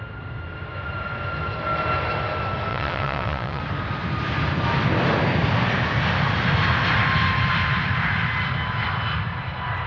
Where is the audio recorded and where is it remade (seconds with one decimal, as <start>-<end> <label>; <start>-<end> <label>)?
0.0-2.7 recorded; 2.7-3.6 remade; 3.6-9.9 recorded